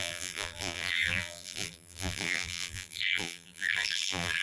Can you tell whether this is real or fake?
fake